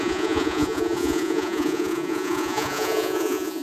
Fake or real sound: fake